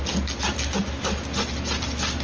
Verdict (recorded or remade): recorded